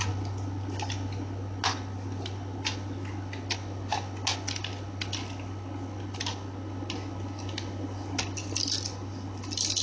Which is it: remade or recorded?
recorded